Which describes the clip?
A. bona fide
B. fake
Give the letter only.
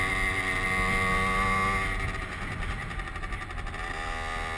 A